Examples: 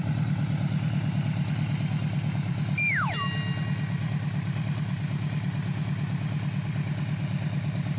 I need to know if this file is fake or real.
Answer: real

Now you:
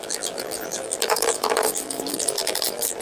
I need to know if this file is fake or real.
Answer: fake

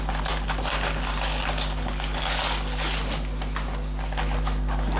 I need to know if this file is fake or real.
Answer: real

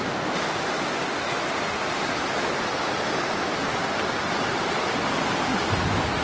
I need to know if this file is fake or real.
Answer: real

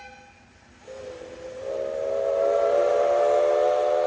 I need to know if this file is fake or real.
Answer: real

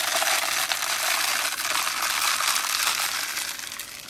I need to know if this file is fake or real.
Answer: real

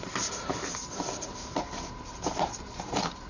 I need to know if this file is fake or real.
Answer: real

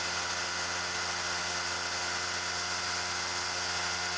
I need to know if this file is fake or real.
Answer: real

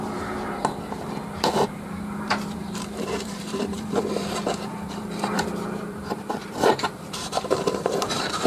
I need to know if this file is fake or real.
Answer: fake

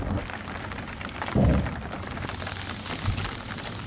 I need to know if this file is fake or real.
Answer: real